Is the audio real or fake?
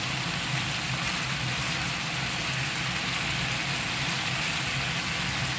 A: real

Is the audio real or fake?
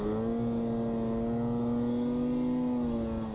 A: real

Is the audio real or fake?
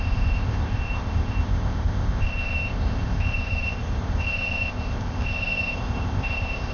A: fake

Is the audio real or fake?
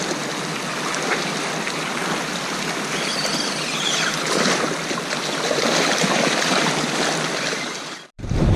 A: real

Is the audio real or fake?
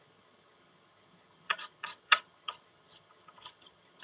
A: fake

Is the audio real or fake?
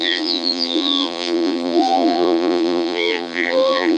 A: fake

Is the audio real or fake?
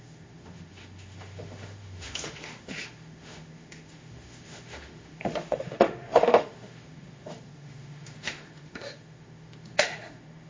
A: fake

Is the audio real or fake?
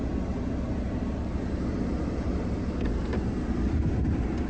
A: real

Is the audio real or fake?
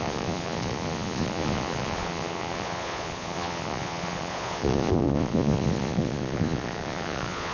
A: fake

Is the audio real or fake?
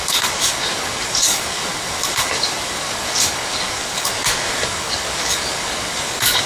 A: fake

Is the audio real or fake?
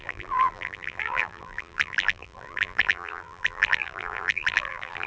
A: fake